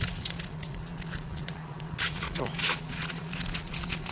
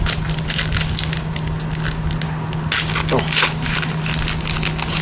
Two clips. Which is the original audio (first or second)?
second